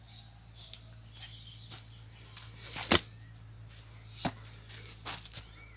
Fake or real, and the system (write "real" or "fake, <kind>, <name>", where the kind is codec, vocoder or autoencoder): real